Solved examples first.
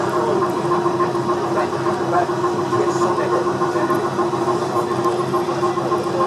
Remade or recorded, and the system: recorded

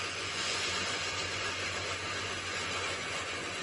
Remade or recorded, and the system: remade, vocoder, Vocos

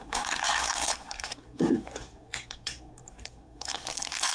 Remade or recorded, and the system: remade, codec, SNAC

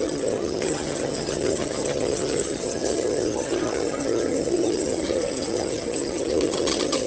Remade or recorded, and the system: remade, vocoder, HiFi-GAN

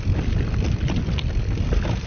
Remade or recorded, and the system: recorded